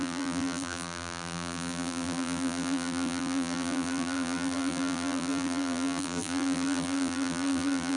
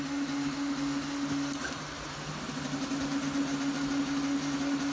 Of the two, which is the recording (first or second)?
second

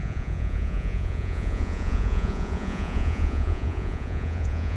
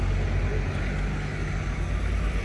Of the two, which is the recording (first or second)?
second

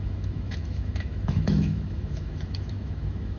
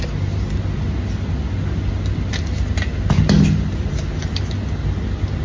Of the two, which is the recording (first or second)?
second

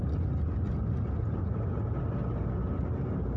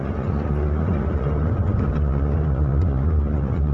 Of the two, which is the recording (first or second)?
first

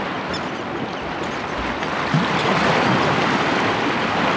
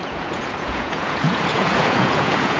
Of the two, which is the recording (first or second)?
first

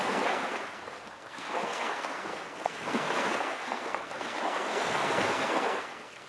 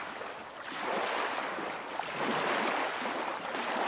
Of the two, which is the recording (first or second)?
second